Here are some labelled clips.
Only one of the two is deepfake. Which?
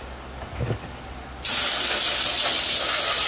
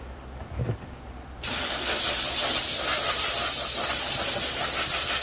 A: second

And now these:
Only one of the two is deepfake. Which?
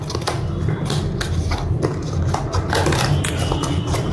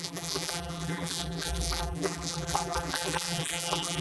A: second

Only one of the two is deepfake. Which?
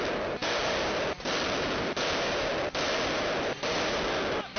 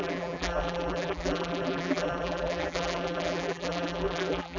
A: second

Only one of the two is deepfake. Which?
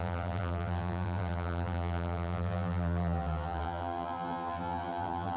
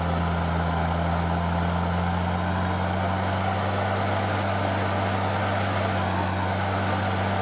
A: first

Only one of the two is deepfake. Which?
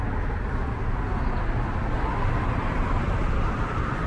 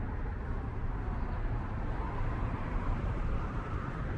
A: second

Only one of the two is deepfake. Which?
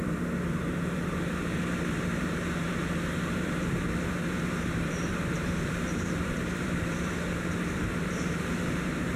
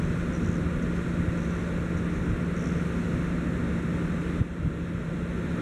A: first